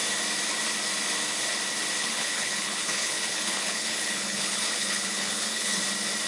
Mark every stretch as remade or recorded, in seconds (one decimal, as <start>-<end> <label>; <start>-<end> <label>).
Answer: 0.0-2.0 recorded; 2.0-5.8 remade; 5.8-6.3 recorded